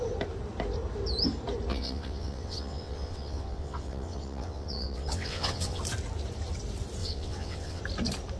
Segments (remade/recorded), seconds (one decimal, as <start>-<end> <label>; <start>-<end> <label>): 0.0-1.7 recorded; 1.7-5.8 remade; 5.8-7.0 recorded; 7.0-7.8 remade; 7.8-8.4 recorded